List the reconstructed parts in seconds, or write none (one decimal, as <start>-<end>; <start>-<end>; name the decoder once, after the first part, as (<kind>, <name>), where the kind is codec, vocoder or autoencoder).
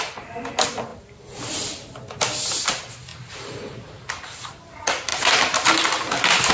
none